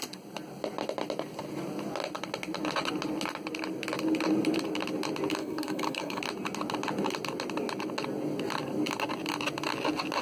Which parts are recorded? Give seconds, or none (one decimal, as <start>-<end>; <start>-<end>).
0.0-5.4; 6.2-10.2